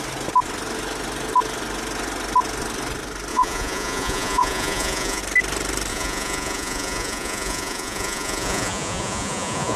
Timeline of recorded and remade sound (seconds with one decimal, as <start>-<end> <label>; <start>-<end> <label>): 0.0-3.3 recorded; 3.3-5.2 remade; 5.2-5.9 recorded; 5.9-9.8 remade